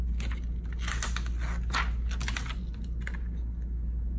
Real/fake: real